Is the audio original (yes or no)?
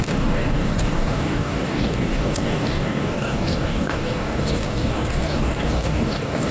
no